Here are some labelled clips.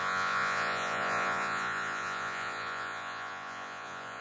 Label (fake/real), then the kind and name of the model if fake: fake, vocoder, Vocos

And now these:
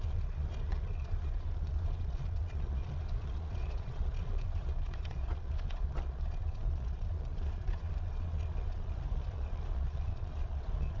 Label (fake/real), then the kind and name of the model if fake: fake, vocoder, Vocos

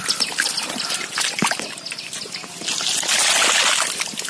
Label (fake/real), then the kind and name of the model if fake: real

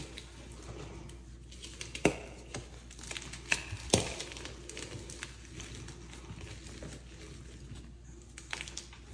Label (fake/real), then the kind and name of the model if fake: real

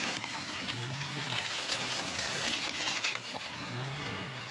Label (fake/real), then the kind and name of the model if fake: fake, codec, SNAC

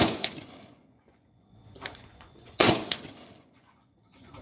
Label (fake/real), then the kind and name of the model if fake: fake, vocoder, Vocos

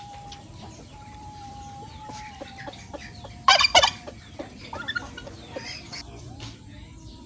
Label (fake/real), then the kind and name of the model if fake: fake, vocoder, BigVGAN v2